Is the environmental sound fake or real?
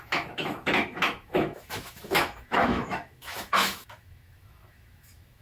fake